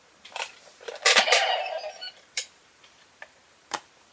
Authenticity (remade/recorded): remade